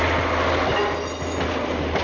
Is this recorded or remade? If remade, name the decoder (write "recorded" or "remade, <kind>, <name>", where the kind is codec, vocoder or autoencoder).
recorded